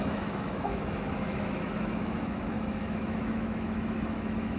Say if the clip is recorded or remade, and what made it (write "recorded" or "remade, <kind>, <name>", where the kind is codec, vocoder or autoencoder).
remade, autoencoder, DAC-VAE